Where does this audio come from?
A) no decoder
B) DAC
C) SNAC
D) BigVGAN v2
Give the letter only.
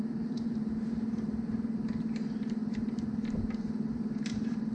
D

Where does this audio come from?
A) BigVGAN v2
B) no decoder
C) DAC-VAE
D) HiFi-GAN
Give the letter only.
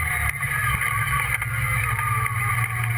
B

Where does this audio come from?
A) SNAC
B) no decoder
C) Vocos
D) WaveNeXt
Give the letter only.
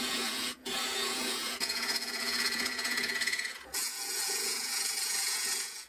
C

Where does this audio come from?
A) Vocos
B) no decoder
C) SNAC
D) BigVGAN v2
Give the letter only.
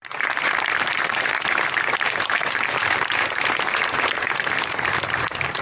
D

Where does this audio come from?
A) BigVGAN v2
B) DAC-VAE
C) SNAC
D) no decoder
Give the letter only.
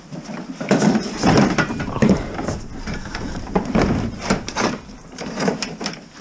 A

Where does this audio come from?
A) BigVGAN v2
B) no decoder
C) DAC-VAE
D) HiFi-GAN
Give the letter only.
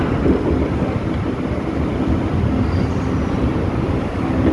B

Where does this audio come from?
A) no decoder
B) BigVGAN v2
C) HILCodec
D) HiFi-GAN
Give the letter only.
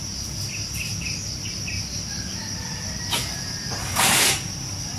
B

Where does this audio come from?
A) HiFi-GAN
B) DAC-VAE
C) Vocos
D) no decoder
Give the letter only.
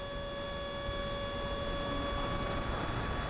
D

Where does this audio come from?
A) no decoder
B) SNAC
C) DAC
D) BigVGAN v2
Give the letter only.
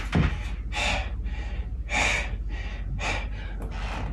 A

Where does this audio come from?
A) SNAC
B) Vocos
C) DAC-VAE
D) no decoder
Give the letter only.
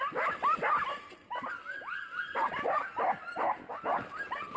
D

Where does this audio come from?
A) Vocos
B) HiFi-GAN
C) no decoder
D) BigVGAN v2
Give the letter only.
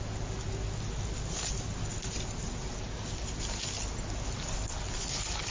C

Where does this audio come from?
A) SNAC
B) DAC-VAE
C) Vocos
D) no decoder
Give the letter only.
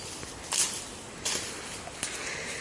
D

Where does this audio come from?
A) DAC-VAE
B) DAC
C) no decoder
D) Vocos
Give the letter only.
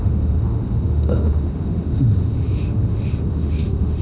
A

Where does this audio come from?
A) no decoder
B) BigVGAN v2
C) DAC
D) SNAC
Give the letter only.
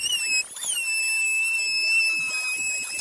A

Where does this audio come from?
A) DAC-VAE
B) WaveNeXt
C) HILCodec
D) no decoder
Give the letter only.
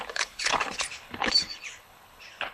C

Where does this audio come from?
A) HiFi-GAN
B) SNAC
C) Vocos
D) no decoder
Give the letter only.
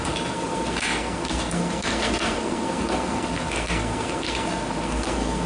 B